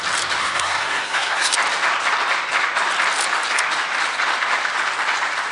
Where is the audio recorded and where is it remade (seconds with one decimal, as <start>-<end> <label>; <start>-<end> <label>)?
0.0-0.4 recorded; 0.4-1.5 remade; 1.5-5.5 recorded